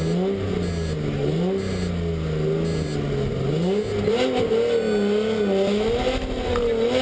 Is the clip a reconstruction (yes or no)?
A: no